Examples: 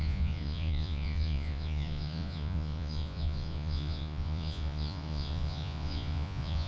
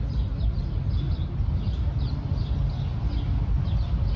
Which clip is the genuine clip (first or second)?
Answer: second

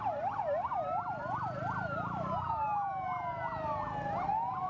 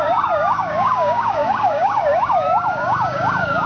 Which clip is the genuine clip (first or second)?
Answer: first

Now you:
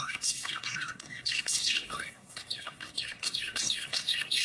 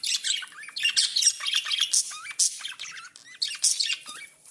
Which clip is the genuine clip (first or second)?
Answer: second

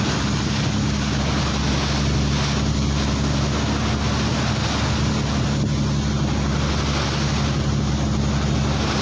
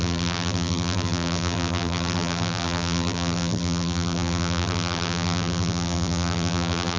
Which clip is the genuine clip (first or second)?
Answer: first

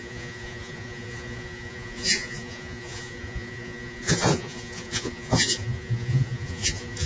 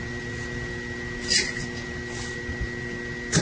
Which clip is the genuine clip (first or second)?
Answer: second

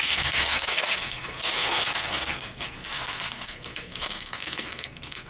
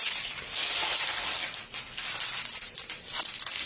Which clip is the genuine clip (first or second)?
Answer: second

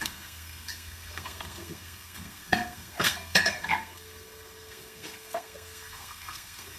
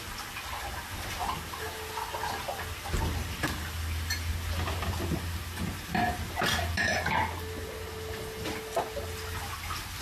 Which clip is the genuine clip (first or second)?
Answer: second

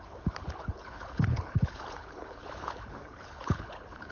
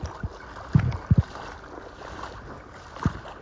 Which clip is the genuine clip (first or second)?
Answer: second